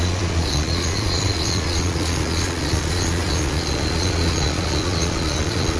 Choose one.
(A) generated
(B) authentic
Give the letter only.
A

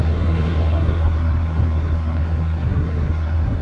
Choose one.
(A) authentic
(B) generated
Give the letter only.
B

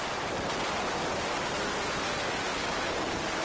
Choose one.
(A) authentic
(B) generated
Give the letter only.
A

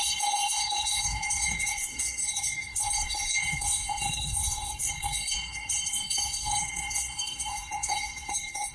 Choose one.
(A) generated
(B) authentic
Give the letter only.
A